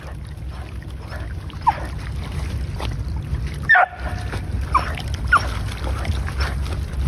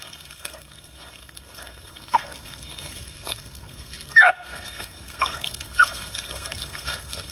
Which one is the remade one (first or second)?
second